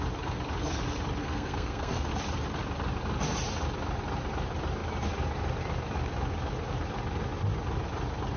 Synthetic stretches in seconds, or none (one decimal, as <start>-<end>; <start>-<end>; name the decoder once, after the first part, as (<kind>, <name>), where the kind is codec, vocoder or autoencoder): 1.2-2.1 (codec, SNAC)